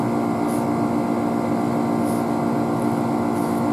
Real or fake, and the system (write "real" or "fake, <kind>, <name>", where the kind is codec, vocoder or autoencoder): real